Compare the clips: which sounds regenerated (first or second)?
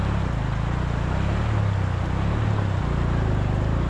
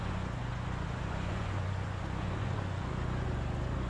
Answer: second